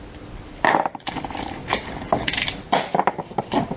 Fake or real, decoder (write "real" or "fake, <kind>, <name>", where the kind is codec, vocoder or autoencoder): real